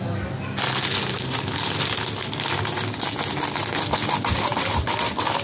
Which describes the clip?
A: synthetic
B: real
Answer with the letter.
B